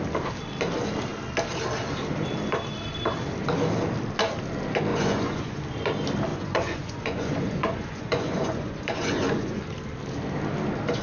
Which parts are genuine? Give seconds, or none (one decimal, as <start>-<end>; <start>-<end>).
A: 0.0-4.9; 5.6-6.3; 9.6-11.0